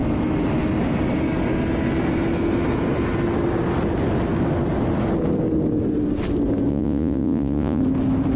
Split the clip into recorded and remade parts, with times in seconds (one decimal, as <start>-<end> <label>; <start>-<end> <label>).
0.0-6.7 recorded; 6.7-7.8 remade; 7.8-8.4 recorded